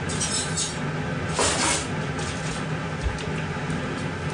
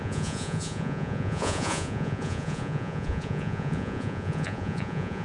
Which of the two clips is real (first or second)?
first